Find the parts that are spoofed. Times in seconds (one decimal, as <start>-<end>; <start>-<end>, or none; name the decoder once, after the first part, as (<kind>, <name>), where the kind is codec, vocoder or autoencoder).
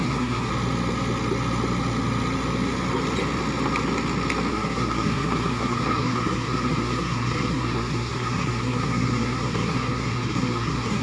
0.0-0.5 (codec, SNAC); 4.5-11.0